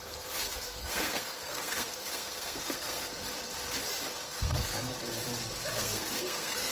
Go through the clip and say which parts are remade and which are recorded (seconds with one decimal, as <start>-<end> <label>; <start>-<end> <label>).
0.0-3.1 remade; 3.1-4.2 recorded; 4.2-4.9 remade; 4.9-5.7 recorded; 5.7-6.7 remade